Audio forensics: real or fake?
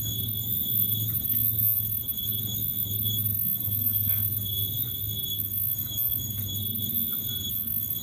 fake